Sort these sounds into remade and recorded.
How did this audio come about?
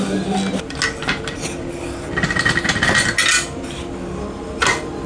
recorded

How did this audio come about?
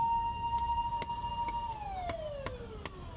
recorded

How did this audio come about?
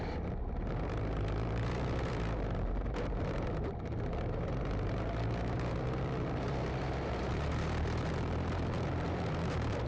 remade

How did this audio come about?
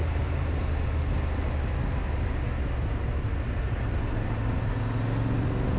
recorded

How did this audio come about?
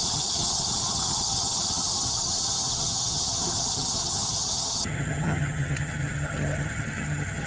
remade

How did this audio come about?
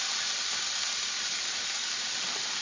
recorded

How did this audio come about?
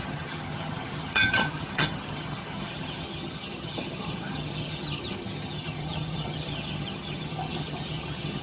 remade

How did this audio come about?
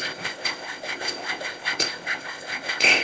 remade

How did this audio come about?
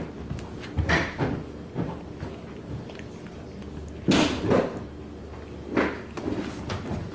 recorded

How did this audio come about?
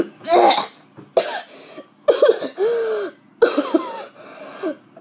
recorded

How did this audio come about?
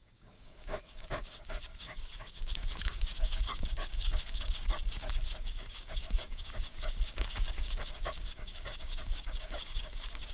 remade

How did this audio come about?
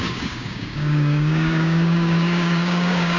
remade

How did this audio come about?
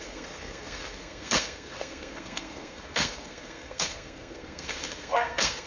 remade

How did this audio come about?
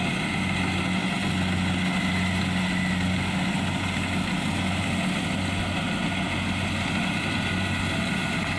recorded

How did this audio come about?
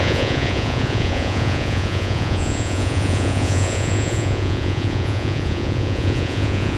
remade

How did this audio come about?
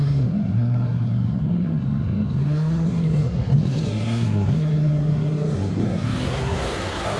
remade